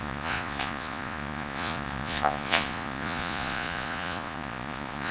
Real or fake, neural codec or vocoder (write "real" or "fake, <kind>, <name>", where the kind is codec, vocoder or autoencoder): fake, vocoder, Vocos